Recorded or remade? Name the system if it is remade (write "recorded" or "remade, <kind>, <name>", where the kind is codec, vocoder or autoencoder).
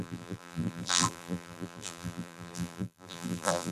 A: remade, vocoder, BigVGAN v2